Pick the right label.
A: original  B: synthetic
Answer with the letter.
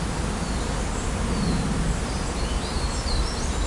A